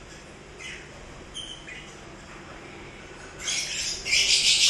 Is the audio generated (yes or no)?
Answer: no